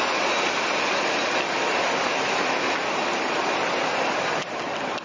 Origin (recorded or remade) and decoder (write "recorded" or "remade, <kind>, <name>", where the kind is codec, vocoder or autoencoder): recorded